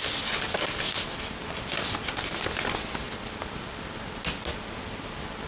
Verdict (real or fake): real